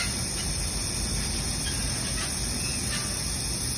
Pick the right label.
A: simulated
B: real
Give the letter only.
B